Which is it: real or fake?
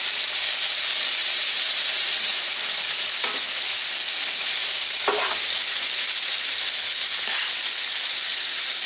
real